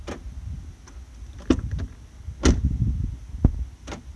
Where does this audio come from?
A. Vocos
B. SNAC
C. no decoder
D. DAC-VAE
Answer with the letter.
C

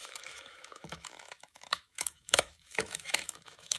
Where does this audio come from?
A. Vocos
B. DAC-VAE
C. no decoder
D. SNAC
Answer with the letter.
B